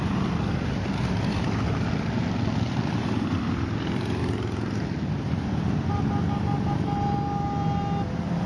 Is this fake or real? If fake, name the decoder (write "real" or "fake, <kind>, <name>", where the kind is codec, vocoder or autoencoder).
real